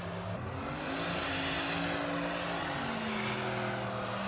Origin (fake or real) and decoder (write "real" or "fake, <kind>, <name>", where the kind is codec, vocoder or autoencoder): real